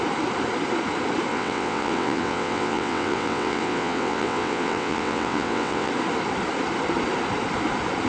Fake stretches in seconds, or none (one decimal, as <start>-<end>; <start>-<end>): 1.3-5.9